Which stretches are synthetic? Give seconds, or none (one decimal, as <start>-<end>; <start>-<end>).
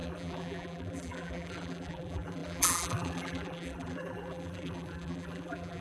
0.0-5.8